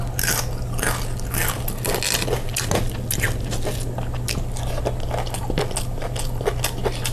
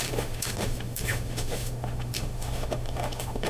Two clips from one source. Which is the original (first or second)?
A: first